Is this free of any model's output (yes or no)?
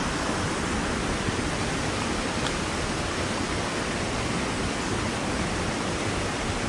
yes